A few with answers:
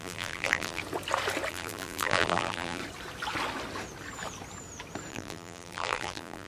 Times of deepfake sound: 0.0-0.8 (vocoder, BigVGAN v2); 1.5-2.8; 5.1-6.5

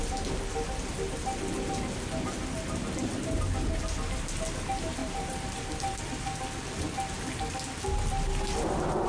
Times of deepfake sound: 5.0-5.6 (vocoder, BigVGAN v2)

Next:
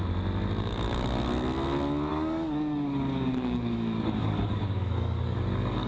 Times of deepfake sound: 2.1-5.9 (codec, DAC)

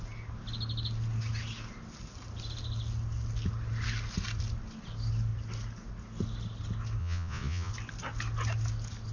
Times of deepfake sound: 7.0-7.7 (vocoder, Vocos)